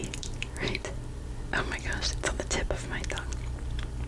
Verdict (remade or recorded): recorded